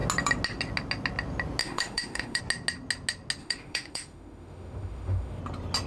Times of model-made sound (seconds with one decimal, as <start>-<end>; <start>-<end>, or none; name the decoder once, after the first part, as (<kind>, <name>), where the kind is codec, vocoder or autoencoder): 1.6-2.4 (autoencoder, DAC-VAE); 3.4-5.4